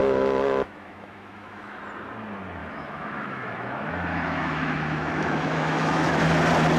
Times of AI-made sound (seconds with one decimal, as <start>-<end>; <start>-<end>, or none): 0.0-1.8; 2.6-6.2